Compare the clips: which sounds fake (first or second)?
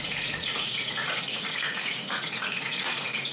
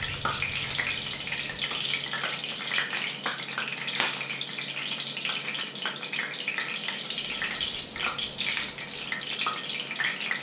first